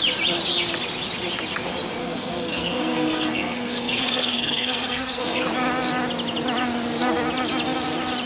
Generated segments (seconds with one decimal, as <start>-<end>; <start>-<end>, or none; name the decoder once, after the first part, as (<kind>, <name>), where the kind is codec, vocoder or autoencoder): 2.0-5.4 (codec, SNAC)